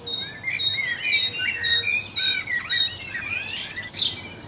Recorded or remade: recorded